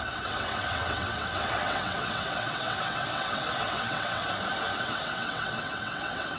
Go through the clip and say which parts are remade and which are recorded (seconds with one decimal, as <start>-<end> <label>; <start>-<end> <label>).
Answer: 0.0-4.2 remade; 4.2-4.8 recorded; 4.8-6.4 remade